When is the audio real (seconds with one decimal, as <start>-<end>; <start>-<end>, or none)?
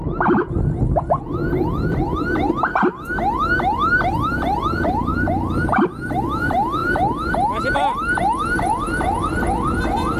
0.0-10.2